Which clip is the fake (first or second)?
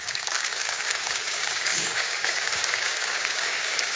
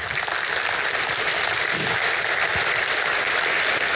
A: first